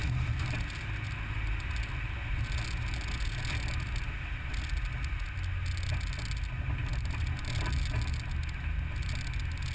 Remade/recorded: recorded